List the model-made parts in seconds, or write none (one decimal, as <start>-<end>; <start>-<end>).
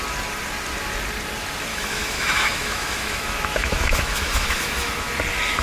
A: 1.7-5.1